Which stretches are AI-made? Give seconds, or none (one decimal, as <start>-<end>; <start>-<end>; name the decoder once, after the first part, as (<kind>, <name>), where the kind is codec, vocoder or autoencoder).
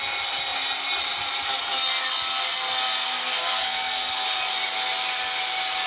3.1-4.1 (codec, SNAC)